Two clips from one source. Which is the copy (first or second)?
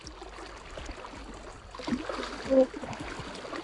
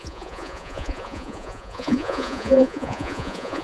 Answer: second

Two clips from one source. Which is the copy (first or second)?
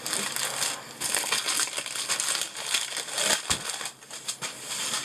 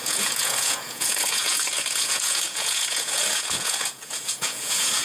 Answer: second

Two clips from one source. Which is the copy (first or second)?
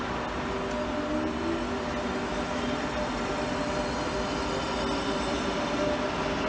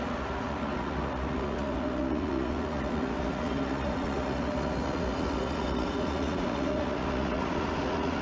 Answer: second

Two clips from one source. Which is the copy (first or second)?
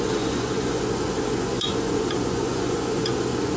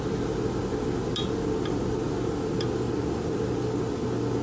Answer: first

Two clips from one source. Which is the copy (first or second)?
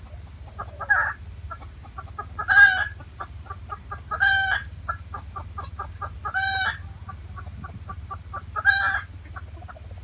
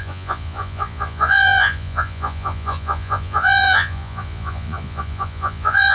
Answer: second